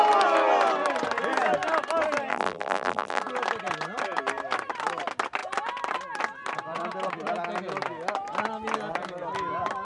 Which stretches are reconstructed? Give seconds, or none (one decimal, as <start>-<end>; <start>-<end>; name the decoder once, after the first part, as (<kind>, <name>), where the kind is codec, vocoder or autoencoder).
2.3-3.2 (vocoder, BigVGAN v2)